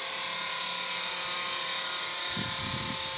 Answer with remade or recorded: recorded